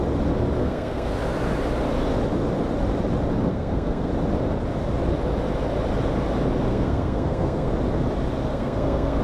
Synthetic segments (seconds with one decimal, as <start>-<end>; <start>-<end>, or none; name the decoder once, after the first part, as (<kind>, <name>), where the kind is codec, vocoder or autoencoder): 0.6-1.1 (codec, SNAC); 3.5-4.1; 6.7-7.7; 8.5-9.2

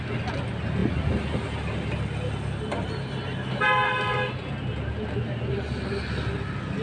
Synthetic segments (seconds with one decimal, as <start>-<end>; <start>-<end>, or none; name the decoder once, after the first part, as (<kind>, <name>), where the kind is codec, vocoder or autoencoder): none

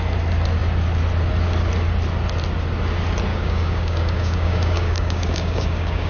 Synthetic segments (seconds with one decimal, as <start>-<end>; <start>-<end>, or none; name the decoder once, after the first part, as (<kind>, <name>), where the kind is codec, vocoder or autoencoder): 3.3-6.1 (codec, DAC)

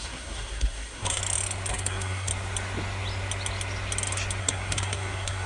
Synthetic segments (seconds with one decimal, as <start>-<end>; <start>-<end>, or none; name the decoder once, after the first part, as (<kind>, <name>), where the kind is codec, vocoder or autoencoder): 0.0-1.2 (codec, SNAC); 1.7-2.3; 4.4-5.5